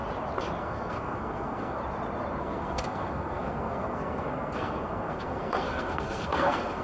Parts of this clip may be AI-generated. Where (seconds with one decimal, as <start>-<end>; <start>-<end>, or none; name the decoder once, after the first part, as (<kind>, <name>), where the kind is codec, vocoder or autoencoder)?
0.6-1.8 (codec, SNAC); 2.4-6.8